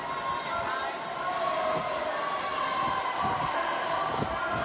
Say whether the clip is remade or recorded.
recorded